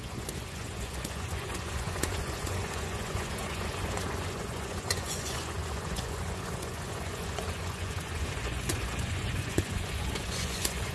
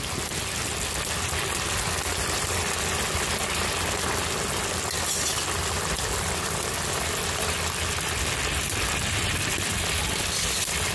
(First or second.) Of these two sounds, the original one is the second